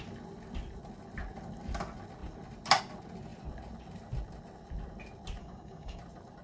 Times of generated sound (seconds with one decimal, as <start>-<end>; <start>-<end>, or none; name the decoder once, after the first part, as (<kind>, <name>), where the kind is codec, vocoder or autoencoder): 5.4-6.0 (codec, DAC)

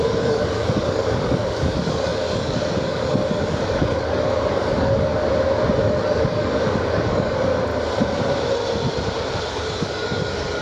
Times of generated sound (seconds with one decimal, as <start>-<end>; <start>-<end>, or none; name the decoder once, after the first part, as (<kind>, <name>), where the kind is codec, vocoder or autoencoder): 0.0-5.1 (codec, DAC); 5.7-7.7; 9.5-10.6

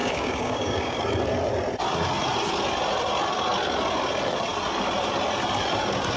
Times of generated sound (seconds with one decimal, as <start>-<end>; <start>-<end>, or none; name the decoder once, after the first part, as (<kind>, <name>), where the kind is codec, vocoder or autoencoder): 0.0-1.0 (codec, DAC)

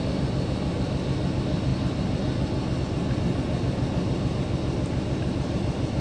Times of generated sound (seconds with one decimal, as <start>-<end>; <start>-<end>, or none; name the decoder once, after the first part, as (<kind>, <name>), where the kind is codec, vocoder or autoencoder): none